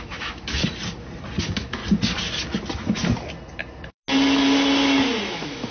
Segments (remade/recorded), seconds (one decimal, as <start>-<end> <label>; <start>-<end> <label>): 0.0-0.6 remade; 0.6-1.4 recorded; 1.4-1.8 remade; 1.8-5.2 recorded; 5.2-5.7 remade